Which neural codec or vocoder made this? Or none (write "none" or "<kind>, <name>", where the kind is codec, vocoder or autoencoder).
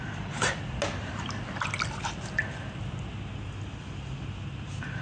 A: none